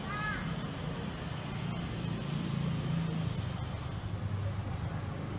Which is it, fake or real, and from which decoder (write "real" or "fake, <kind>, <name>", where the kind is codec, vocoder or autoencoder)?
real